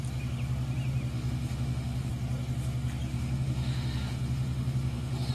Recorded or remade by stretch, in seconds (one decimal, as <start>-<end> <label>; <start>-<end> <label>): 0.0-1.1 recorded; 1.1-2.1 remade; 2.1-3.1 recorded; 3.1-5.3 remade